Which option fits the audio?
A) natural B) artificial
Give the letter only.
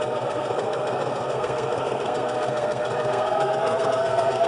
B